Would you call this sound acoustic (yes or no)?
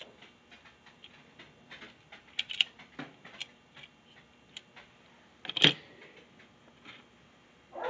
yes